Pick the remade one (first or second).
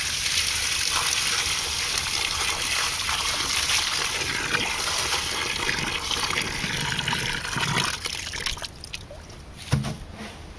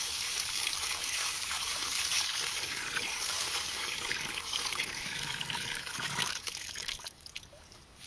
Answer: second